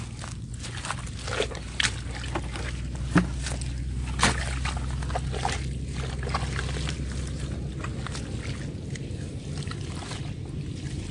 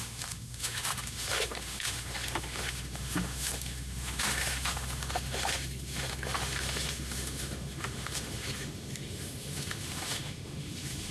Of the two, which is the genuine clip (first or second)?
first